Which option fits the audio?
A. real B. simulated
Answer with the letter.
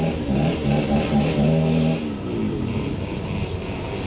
A